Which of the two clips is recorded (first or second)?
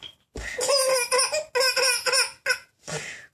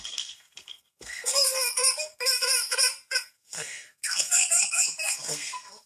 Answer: first